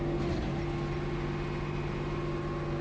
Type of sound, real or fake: real